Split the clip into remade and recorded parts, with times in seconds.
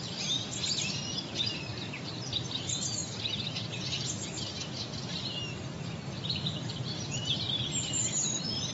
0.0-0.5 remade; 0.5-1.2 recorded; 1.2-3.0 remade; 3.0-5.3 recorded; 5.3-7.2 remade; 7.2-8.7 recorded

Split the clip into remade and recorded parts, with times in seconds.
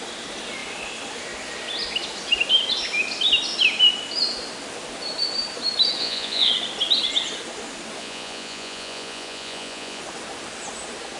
0.0-6.0 recorded; 6.0-6.5 remade; 6.5-8.0 recorded; 8.0-10.0 remade; 10.0-11.2 recorded